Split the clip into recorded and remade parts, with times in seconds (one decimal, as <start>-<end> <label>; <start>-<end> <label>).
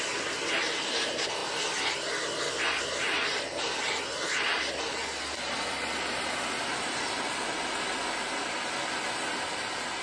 0.0-10.0 recorded